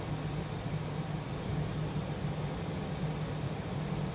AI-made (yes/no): no